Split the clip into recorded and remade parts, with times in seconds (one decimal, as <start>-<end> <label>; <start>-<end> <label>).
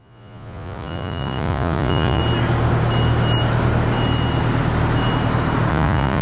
0.0-2.2 remade; 2.2-5.7 recorded; 5.7-6.2 remade